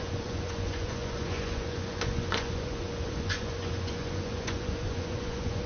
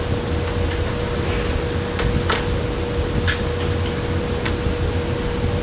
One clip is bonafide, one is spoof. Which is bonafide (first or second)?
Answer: second